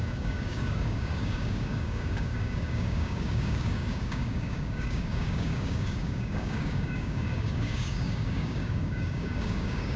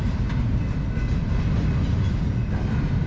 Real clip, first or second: second